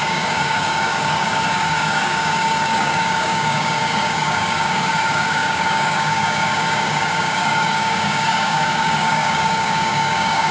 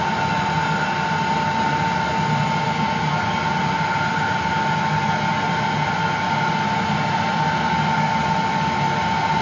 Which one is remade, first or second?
first